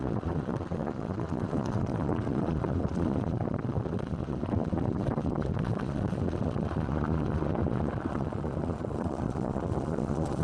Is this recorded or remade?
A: remade